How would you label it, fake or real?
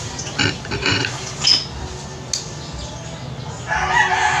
real